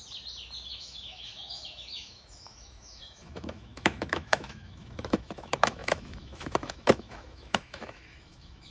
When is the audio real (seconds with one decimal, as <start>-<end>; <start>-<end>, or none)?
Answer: 0.0-0.7

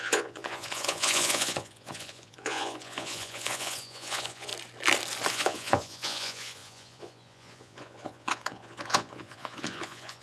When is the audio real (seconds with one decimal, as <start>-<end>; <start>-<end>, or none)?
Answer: 4.5-5.3

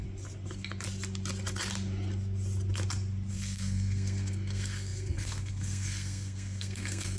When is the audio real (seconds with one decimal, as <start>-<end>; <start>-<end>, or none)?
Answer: 0.0-3.3

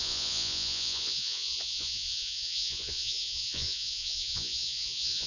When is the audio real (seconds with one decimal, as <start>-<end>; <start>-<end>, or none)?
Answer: none

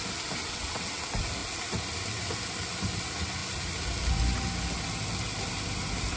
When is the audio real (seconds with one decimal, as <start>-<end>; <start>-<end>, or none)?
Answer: 0.0-0.4; 1.0-6.2

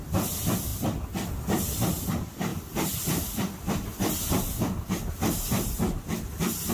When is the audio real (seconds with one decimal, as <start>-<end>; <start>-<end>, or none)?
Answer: 0.7-2.0; 2.5-6.7

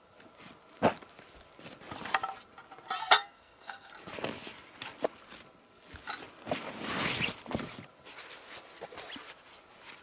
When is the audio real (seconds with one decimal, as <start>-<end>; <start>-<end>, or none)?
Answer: 0.0-3.0; 3.9-10.0